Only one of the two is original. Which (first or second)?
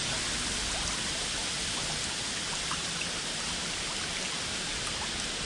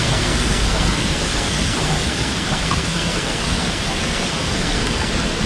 first